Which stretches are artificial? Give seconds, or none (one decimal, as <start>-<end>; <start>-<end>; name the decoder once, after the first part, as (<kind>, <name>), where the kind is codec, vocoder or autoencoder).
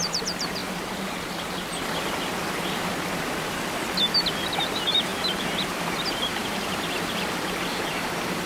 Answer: 0.0-0.6 (vocoder, BigVGAN v2); 4.6-8.5